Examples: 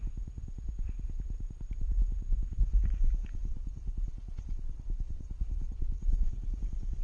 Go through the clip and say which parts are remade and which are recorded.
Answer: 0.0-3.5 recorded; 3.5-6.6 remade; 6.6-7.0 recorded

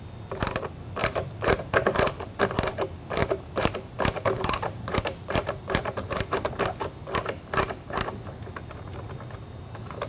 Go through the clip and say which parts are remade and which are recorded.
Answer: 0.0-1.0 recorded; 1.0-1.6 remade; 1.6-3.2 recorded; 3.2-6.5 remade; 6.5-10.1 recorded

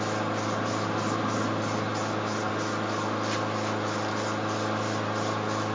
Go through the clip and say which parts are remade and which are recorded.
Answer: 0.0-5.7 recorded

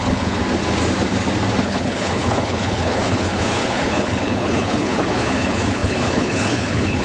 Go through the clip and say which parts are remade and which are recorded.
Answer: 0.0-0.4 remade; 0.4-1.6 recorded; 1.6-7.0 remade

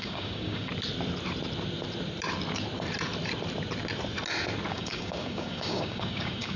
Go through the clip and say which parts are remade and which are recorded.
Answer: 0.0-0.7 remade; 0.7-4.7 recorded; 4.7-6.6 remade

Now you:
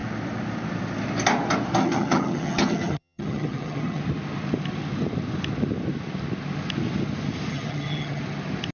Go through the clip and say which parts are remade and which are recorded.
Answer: 0.0-1.8 recorded; 1.8-4.0 remade; 4.0-7.5 recorded; 7.5-8.2 remade; 8.2-8.7 recorded